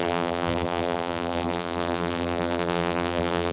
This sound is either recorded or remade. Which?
remade